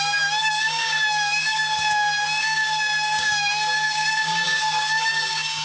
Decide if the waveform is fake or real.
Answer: fake